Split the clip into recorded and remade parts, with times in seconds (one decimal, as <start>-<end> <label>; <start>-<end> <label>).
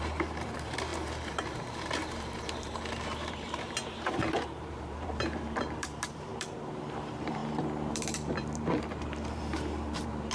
0.0-7.4 remade; 7.4-7.9 recorded; 7.9-10.3 remade